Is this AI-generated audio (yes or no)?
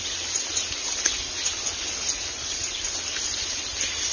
no